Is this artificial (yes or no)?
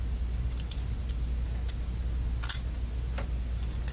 no